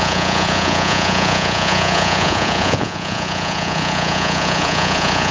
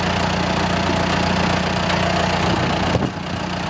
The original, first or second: second